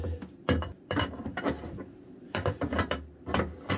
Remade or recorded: remade